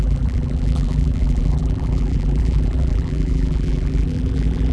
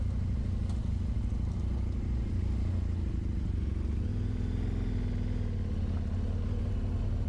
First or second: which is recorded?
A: second